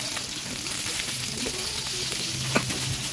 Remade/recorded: recorded